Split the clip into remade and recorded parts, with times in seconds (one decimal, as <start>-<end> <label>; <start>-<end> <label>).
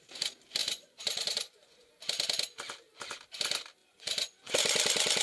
0.0-0.6 recorded; 0.6-1.9 remade; 1.9-3.8 recorded; 3.8-4.5 remade; 4.5-5.2 recorded